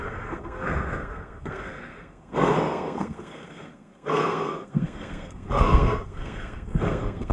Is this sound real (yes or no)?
no